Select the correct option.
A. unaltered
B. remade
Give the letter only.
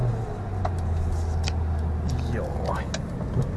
A